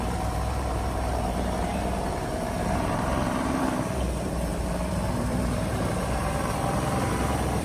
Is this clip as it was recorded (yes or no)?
no